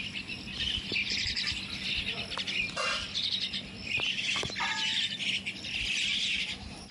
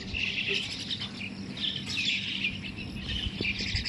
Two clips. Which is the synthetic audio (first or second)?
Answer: first